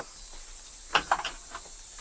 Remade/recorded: recorded